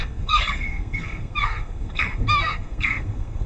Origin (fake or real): fake